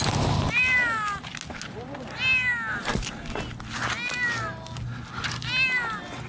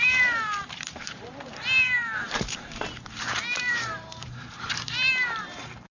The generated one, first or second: second